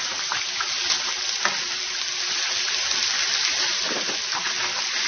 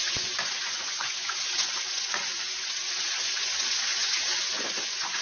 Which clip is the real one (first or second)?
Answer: first